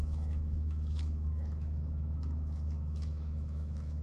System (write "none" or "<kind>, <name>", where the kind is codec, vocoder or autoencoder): autoencoder, DAC-VAE